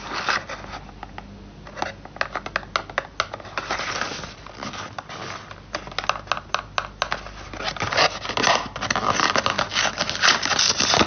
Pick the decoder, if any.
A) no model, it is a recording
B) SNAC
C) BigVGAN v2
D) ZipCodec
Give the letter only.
A